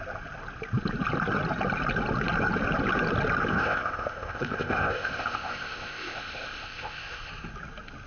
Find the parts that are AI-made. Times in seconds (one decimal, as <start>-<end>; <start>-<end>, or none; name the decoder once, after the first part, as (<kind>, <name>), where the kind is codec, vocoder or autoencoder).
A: 3.5-7.3 (codec, ZipCodec)